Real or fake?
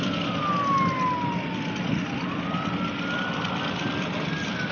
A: real